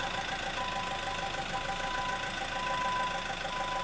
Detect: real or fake real